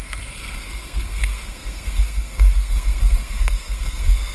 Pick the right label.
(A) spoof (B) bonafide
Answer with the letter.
A